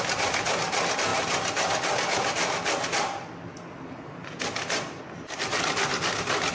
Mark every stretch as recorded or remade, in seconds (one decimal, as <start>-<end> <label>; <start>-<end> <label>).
0.0-6.5 recorded